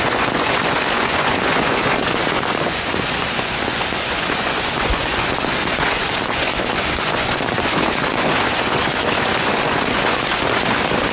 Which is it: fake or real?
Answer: fake